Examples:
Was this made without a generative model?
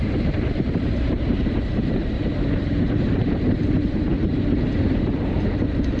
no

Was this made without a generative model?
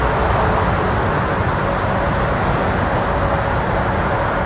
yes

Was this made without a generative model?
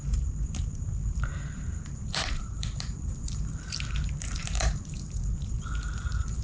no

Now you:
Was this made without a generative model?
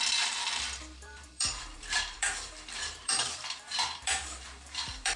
no